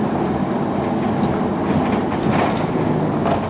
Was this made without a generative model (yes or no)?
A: yes